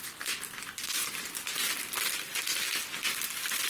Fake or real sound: real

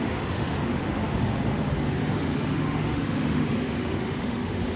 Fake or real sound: fake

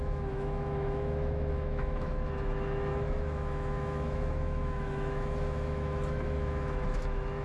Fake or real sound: fake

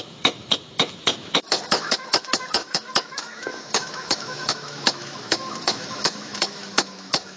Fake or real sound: fake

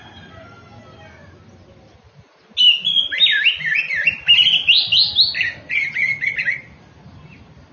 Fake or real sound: real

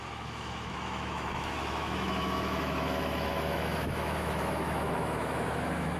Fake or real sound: fake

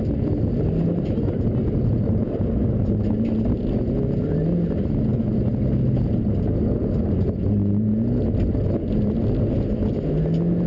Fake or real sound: real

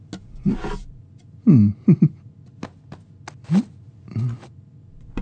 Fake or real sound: real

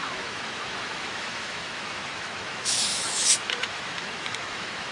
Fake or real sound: fake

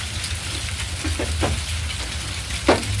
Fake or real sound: real